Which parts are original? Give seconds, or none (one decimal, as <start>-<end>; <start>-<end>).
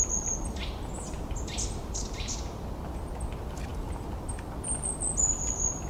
0.0-5.9